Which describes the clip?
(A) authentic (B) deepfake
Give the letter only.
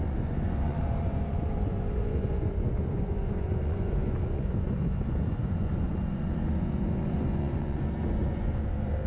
B